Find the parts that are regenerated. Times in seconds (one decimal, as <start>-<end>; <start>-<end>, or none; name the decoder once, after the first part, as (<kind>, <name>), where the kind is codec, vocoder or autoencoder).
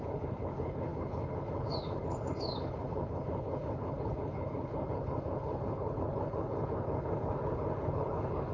0.0-8.5 (codec, HILCodec)